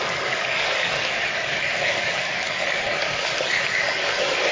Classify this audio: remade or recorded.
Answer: remade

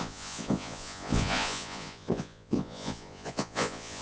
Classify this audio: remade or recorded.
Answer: remade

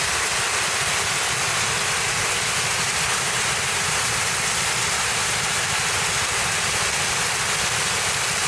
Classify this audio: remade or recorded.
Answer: recorded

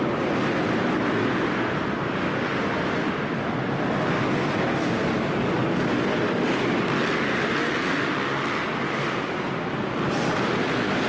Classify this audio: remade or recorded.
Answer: recorded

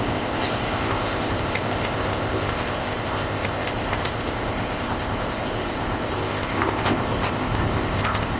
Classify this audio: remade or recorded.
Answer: remade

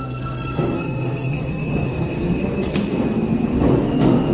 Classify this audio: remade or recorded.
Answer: remade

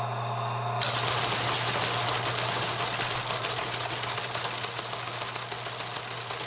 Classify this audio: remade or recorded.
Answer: recorded